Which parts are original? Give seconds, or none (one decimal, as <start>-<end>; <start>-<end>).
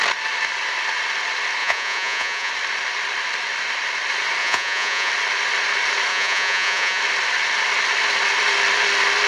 0.0-1.6; 2.5-4.4; 5.1-6.1; 7.0-9.3